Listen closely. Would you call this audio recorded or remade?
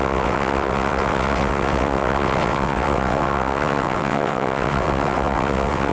remade